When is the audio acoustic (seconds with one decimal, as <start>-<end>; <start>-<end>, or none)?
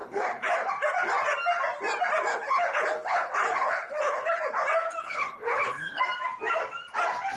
0.7-2.3; 4.4-5.0; 6.0-7.4